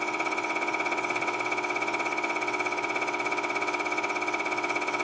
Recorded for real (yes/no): no